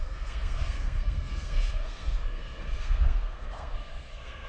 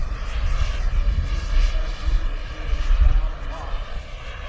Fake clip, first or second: first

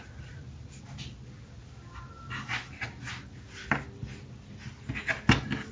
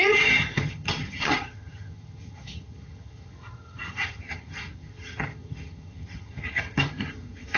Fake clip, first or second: second